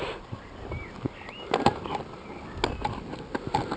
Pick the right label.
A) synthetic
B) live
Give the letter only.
B